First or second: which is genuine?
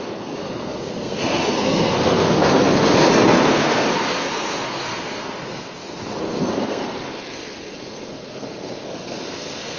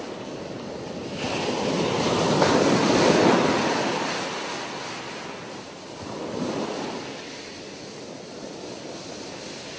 second